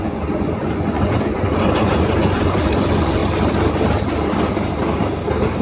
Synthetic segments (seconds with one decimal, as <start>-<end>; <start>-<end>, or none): 0.0-3.2